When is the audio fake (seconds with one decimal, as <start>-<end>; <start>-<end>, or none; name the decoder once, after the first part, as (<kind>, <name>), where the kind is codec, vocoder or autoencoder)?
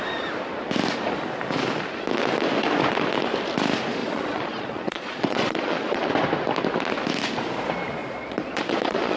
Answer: 4.0-6.1 (vocoder, Vocos); 8.0-9.2